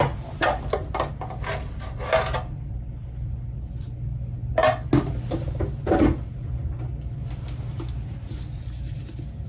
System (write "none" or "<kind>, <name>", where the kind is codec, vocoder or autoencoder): none